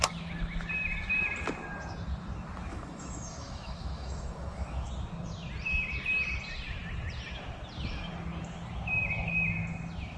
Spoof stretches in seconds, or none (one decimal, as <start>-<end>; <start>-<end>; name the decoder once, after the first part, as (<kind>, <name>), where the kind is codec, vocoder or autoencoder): 2.7-4.9 (autoencoder, DAC-VAE)